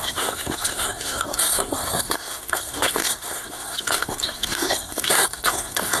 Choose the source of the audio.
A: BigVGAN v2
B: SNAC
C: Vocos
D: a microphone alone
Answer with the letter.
B